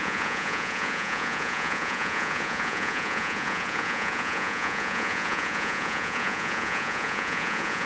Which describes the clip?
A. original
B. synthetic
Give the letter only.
B